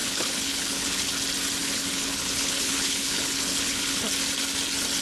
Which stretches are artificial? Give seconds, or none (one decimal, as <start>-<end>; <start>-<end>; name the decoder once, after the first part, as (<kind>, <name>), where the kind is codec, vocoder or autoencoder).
0.0-1.1 (codec, HILCodec); 1.6-4.0